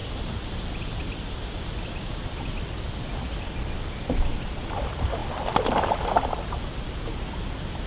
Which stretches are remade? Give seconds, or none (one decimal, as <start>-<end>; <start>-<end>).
none